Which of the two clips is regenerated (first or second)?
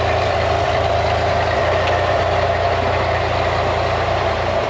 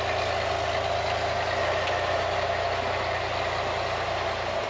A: first